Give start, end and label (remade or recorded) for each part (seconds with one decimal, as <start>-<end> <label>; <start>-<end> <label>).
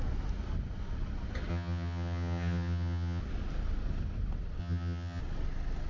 0.0-1.5 recorded; 1.5-3.2 remade; 3.2-4.6 recorded; 4.6-5.2 remade; 5.2-5.9 recorded